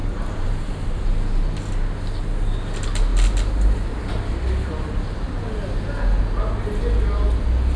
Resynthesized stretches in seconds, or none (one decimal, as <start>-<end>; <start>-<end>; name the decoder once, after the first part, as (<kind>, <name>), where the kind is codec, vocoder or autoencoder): 0.0-1.0 (vocoder, BigVGAN v2)